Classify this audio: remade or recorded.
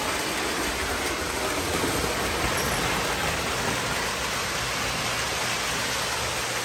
recorded